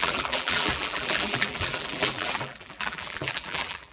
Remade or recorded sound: remade